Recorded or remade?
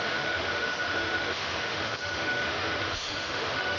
remade